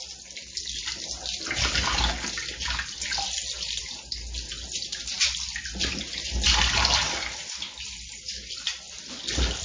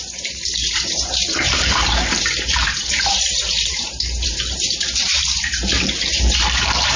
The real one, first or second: first